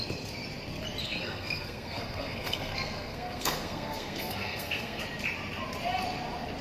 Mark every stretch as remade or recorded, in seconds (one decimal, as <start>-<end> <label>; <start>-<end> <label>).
0.0-1.0 recorded; 1.0-5.0 remade; 5.0-6.6 recorded